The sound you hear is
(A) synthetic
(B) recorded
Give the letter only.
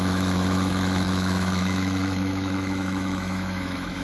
A